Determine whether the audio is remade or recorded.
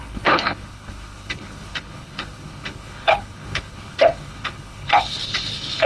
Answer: remade